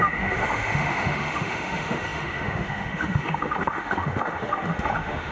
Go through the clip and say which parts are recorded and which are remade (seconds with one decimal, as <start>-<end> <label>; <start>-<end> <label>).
0.0-5.3 remade